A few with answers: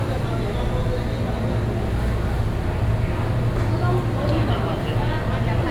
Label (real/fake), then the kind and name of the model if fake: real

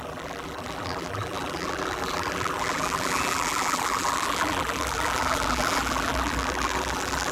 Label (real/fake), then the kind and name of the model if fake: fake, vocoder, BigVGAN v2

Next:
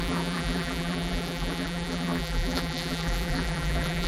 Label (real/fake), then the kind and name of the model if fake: fake, vocoder, BigVGAN v2